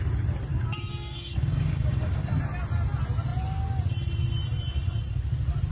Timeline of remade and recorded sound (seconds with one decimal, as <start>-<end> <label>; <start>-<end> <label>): 0.0-0.5 recorded; 0.5-2.4 remade; 2.4-5.7 recorded